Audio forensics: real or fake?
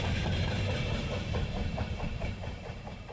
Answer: fake